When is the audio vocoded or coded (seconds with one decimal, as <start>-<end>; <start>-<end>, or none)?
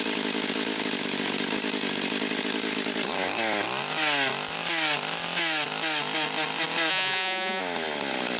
6.9-7.6